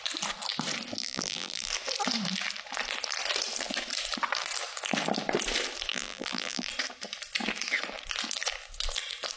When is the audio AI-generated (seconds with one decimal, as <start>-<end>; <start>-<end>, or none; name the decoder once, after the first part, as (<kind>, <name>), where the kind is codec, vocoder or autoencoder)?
1.0-1.7 (vocoder, BigVGAN v2); 5.9-6.7